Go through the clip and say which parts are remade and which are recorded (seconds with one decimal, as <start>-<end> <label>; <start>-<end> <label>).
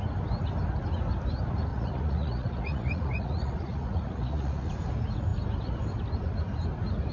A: 0.0-1.7 recorded; 1.7-4.7 remade; 4.7-7.1 recorded